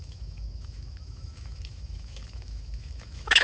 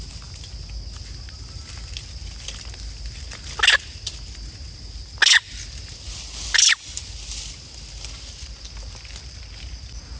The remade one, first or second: first